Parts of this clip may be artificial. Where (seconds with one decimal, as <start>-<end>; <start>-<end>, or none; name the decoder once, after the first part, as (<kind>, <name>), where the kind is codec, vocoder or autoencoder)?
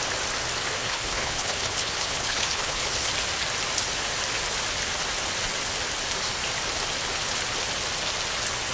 0.8-3.1 (codec, HILCodec)